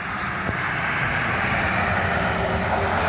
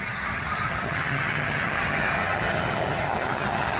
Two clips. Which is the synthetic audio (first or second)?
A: second